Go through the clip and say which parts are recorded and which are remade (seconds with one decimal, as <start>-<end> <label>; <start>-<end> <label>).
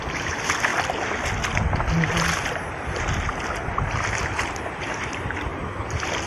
0.0-0.7 remade; 0.7-4.5 recorded; 4.5-6.3 remade